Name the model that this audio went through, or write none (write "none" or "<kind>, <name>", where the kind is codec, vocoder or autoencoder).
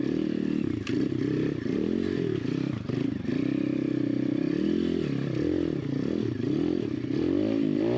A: none